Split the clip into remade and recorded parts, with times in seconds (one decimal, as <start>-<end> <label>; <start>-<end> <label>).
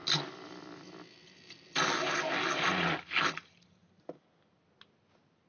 0.0-5.5 recorded